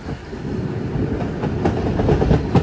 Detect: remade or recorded recorded